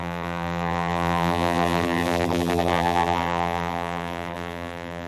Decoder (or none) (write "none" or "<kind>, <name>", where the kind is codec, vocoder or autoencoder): vocoder, BigVGAN v2